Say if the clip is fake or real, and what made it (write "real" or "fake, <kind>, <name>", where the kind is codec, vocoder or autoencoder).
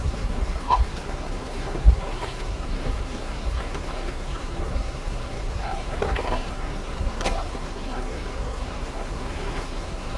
fake, codec, SNAC